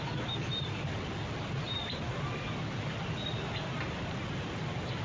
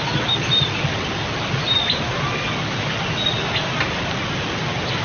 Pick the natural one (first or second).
second